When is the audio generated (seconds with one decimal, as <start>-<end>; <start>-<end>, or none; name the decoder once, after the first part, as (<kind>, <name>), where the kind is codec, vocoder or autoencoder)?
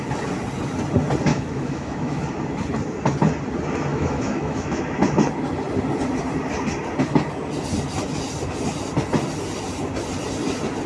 1.3-2.2 (autoencoder, DAC-VAE); 3.9-4.8